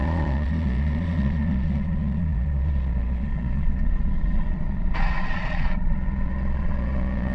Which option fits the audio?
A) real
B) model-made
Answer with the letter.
B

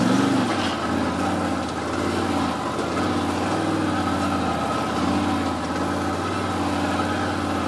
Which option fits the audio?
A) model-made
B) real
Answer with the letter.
B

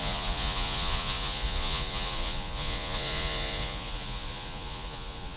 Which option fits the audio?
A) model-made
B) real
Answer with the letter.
A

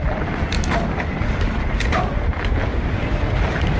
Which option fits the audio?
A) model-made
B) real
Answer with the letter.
B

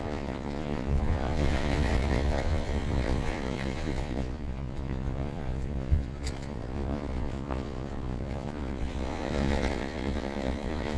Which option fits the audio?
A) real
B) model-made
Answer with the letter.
B